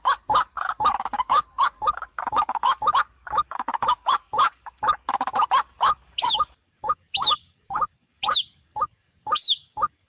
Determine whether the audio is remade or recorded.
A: remade